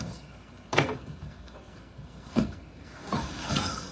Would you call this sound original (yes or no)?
no